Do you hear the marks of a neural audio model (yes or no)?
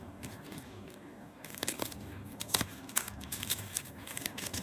yes